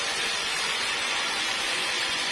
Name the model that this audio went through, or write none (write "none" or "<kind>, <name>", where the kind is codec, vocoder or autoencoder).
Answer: vocoder, Vocos